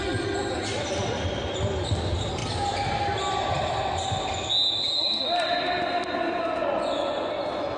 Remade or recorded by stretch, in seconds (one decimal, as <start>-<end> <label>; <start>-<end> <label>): 0.0-6.6 recorded; 6.6-7.3 remade; 7.3-7.8 recorded